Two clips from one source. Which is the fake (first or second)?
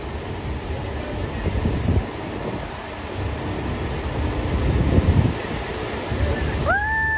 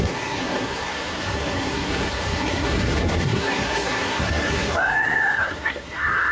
second